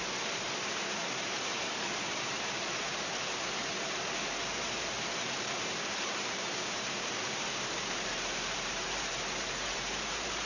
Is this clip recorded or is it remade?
remade